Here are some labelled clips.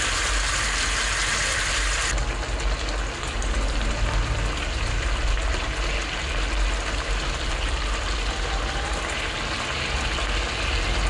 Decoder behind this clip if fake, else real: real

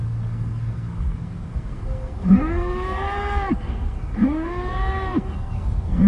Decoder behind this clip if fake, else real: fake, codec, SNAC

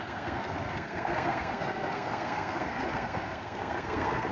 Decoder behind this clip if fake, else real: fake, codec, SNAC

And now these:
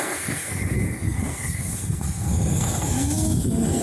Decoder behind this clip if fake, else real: fake, codec, SNAC